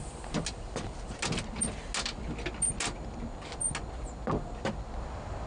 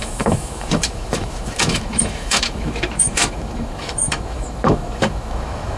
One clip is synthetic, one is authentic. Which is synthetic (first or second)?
second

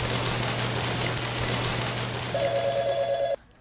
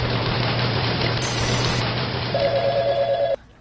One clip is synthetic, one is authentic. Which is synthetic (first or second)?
second